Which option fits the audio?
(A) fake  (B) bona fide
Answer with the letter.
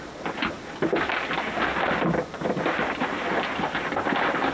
B